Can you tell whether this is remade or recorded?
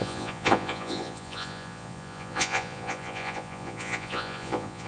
remade